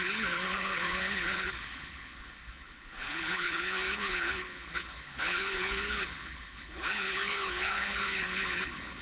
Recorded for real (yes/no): no